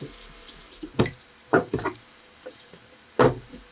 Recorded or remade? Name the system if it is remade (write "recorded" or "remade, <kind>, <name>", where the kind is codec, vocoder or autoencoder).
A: remade, vocoder, BigVGAN v2